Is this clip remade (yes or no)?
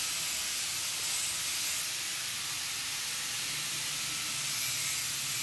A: no